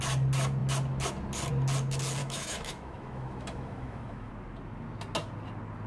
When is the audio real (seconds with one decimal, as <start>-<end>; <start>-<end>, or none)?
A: 0.0-2.2; 4.3-5.9